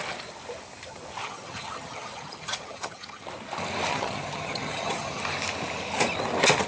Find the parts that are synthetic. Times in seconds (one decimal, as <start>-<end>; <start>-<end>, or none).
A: 1.2-3.3; 3.9-5.2